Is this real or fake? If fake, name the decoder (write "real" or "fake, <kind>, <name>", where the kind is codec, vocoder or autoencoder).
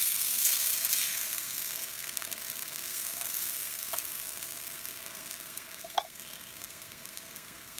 fake, codec, SNAC